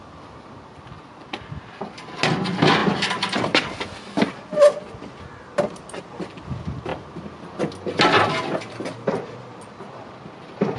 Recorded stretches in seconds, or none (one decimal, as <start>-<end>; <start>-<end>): 0.0-10.8